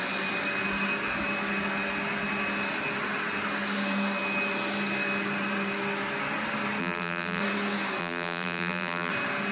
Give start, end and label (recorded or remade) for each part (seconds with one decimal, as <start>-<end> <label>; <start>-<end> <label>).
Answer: 0.0-6.8 recorded; 6.8-7.4 remade; 7.4-8.0 recorded; 8.0-9.1 remade; 9.1-9.5 recorded